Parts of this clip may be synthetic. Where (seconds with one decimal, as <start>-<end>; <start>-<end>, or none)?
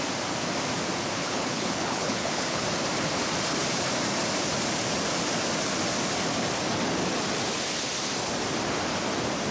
1.2-2.6